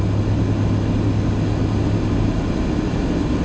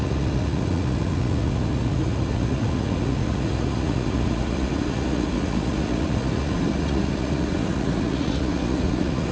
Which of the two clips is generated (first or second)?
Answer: second